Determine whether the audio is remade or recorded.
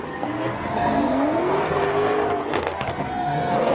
remade